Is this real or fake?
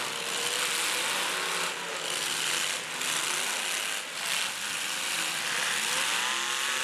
real